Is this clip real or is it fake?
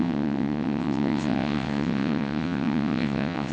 fake